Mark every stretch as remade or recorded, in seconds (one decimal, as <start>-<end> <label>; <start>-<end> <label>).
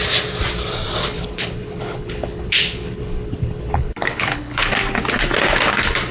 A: 0.0-1.0 recorded; 1.0-4.7 remade; 4.7-6.1 recorded